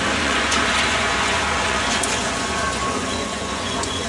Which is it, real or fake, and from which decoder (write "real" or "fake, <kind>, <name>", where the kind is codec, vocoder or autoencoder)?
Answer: fake, vocoder, Vocos